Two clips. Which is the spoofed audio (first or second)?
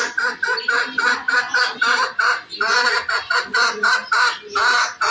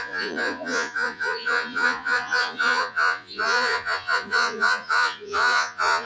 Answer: second